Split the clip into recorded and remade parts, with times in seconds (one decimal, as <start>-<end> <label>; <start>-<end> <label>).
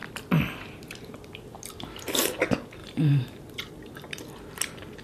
0.0-2.8 recorded; 2.8-3.7 remade; 3.7-5.0 recorded